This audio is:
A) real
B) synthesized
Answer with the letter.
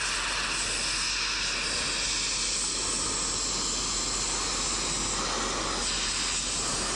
A